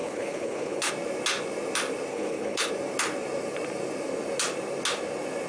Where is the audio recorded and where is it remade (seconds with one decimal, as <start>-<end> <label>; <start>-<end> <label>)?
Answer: 0.0-0.9 remade; 0.9-2.1 recorded; 2.1-2.7 remade; 2.7-5.5 recorded